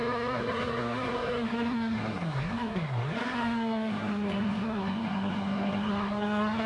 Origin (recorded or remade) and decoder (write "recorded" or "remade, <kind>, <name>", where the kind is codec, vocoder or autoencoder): remade, codec, SNAC